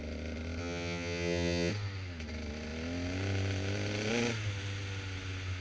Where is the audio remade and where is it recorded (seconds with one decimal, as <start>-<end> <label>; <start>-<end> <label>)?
0.0-0.6 recorded; 0.6-1.7 remade; 1.7-5.6 recorded